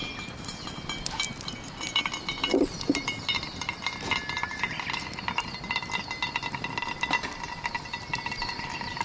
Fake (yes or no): no